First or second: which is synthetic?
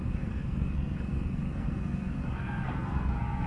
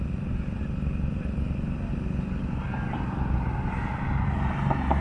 first